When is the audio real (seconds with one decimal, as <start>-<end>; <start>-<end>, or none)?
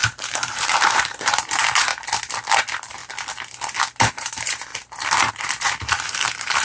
1.9-2.6; 3.0-4.1; 4.7-5.3